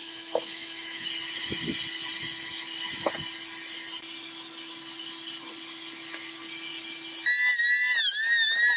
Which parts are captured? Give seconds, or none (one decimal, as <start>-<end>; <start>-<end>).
1.1-8.8